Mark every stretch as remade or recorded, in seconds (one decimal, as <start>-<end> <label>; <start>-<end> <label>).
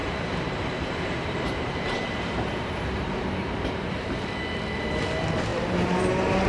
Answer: 0.0-3.9 remade; 3.9-5.5 recorded; 5.5-6.0 remade; 6.0-6.5 recorded